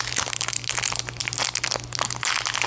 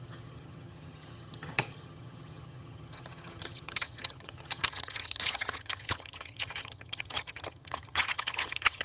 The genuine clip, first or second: first